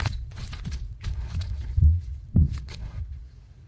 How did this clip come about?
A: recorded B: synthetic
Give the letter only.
B